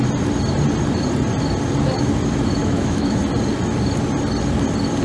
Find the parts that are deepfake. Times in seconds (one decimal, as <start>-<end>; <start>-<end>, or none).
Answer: 2.6-3.2